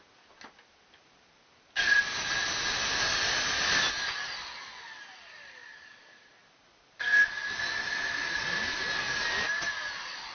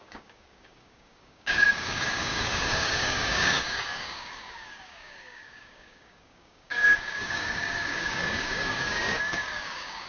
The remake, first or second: second